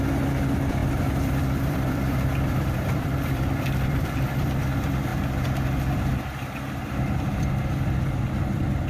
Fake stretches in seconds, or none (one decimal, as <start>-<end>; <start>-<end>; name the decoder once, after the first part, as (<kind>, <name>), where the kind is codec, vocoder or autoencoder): 0.8-4.5 (vocoder, BigVGAN v2)